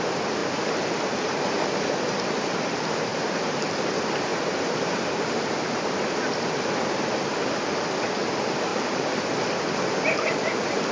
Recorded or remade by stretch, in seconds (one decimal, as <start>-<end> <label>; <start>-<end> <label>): 0.0-3.1 recorded; 3.1-3.7 remade; 3.7-4.3 recorded; 4.3-6.2 remade; 6.2-8.7 recorded; 8.7-9.2 remade; 9.2-10.9 recorded